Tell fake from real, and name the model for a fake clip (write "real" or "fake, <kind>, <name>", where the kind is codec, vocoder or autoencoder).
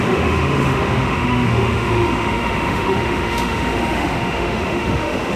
fake, autoencoder, DAC-VAE